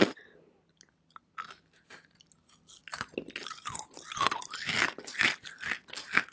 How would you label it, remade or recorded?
recorded